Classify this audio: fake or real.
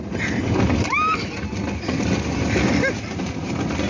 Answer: real